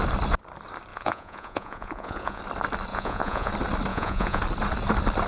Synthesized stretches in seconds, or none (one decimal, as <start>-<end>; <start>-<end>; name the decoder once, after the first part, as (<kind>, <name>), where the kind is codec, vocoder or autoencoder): 0.9-2.4 (vocoder, Vocos); 2.9-3.5; 3.9-4.4